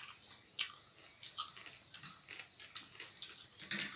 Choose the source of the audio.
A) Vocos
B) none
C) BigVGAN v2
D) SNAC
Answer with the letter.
B